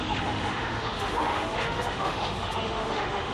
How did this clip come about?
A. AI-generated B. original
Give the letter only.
A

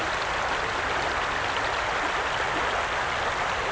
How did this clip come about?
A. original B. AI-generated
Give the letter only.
A